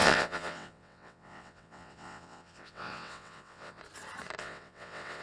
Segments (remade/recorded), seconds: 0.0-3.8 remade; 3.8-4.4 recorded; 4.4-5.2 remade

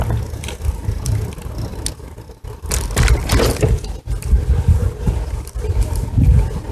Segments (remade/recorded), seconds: 0.0-6.7 recorded

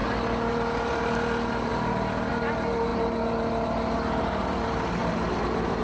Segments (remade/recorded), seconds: 0.0-5.0 recorded; 5.0-5.8 remade

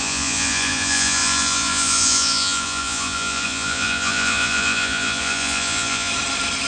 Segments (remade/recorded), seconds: 0.0-6.1 remade; 6.1-6.7 recorded

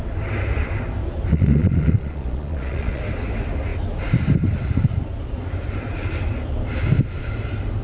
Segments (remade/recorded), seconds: 0.0-1.3 recorded; 1.3-3.0 remade; 3.0-7.8 recorded

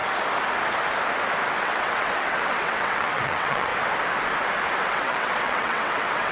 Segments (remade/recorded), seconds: 0.0-1.6 recorded; 1.6-3.7 remade; 3.7-4.8 recorded; 4.8-6.3 remade

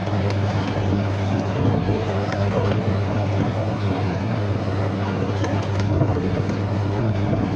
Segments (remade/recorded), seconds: 0.0-7.6 remade